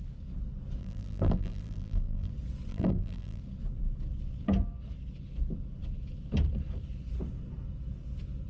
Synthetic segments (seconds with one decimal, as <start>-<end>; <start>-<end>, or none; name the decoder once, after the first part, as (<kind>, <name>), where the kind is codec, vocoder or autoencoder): 0.8-2.3 (vocoder, BigVGAN v2); 2.7-3.4